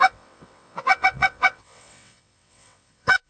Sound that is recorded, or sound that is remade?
remade